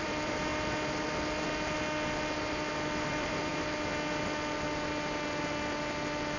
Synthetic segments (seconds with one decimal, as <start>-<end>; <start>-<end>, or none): 0.0-0.5; 3.1-3.5